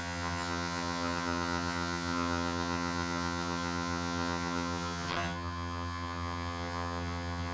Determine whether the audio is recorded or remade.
remade